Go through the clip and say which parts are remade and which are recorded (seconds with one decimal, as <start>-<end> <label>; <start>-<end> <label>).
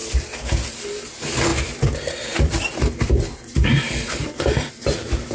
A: 0.0-0.7 remade; 0.7-1.5 recorded; 1.5-4.7 remade; 4.7-5.3 recorded